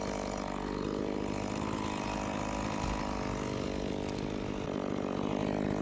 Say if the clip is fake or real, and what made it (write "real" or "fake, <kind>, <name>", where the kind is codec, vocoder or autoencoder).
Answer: real